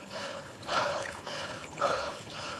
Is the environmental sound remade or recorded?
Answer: remade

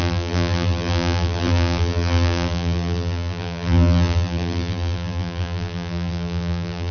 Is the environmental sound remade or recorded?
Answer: remade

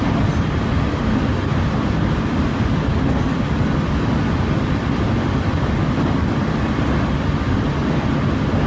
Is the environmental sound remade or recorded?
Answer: recorded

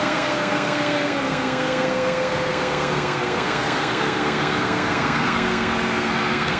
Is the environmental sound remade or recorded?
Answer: remade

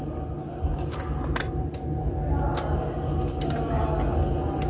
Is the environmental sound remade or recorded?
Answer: recorded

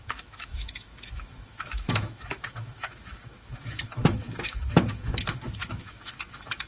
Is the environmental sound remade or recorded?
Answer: remade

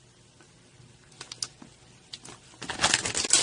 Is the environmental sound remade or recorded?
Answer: recorded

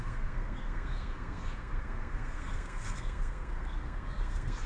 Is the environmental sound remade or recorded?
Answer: remade